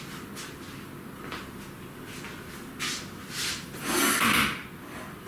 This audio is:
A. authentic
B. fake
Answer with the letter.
A